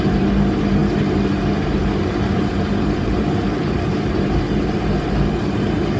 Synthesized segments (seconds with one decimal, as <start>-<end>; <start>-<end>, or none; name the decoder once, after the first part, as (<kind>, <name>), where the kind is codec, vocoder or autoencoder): 0.0-6.0 (vocoder, BigVGAN v2)